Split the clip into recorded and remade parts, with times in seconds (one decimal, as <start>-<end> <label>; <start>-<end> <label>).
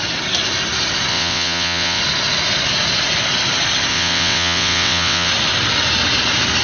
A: 0.0-1.1 recorded; 1.1-2.0 remade; 2.0-3.9 recorded; 3.9-5.3 remade; 5.3-6.6 recorded